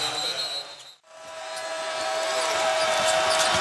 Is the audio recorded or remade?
recorded